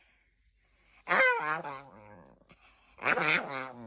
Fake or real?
real